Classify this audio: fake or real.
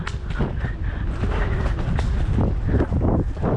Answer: real